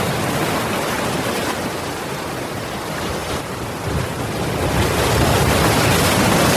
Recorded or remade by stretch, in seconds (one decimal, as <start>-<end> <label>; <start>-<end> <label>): 0.0-6.6 recorded